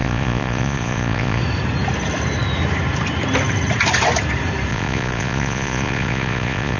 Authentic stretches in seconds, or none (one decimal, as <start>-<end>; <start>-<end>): 1.4-4.7